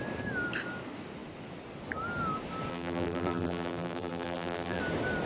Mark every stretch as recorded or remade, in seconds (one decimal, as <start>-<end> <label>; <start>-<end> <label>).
0.0-2.7 recorded; 2.7-4.8 remade; 4.8-5.3 recorded